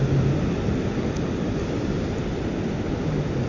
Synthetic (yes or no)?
no